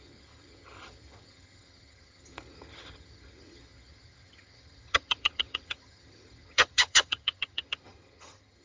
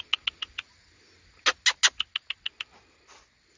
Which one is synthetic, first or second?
first